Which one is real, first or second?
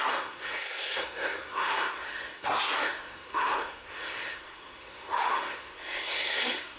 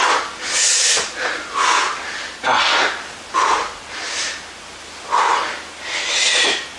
second